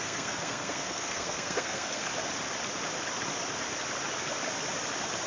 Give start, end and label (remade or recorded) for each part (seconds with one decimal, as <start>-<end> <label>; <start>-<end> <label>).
0.0-2.1 remade; 2.1-5.3 recorded